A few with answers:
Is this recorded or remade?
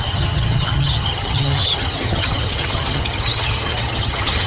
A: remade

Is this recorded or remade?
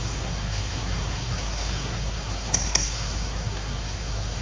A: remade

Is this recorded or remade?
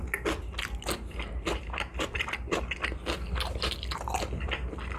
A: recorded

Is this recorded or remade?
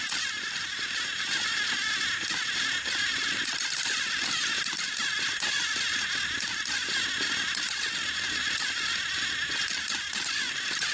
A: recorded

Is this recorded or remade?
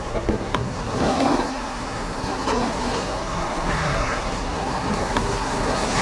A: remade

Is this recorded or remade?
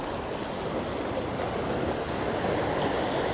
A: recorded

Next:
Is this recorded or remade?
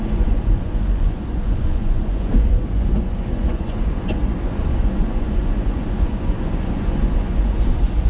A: remade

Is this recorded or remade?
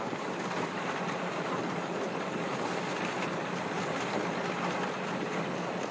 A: recorded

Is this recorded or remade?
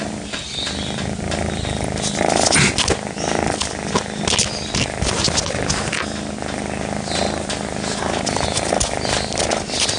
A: recorded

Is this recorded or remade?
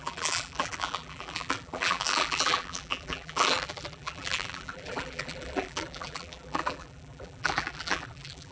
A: remade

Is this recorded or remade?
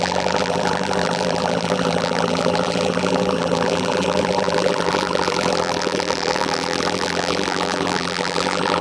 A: remade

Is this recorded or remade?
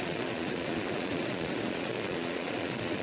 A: remade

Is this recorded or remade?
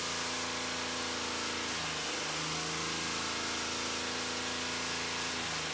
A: recorded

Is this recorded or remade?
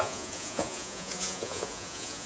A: remade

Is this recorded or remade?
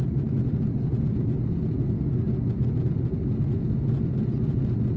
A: recorded